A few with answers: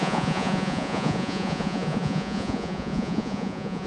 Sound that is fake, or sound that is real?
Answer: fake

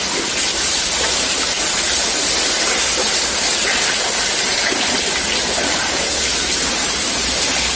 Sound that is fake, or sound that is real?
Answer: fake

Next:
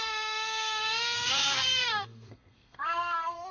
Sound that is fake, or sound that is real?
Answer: fake